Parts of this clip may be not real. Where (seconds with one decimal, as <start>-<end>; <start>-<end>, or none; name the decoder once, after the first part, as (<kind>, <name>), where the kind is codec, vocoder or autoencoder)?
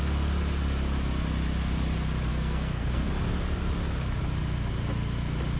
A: 2.3-3.1 (codec, SNAC)